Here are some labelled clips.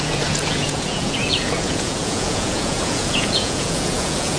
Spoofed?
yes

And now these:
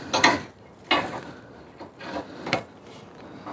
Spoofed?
no